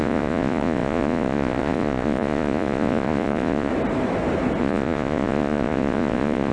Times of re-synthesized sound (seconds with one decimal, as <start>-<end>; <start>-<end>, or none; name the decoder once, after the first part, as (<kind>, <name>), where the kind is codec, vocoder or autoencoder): 0.0-3.7 (vocoder, Vocos); 4.6-6.5